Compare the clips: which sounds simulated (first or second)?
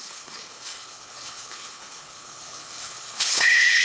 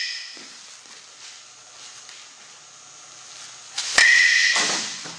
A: first